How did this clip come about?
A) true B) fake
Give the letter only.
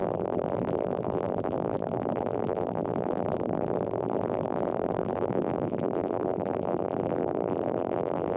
B